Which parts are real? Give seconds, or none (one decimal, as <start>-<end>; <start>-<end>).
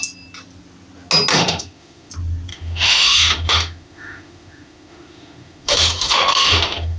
0.0-1.3; 2.1-2.5